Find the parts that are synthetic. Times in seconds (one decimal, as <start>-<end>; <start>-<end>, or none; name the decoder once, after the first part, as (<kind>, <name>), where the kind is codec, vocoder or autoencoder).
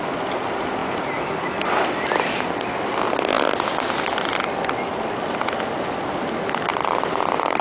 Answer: none